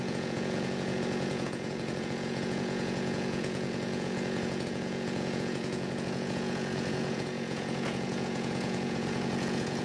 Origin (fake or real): fake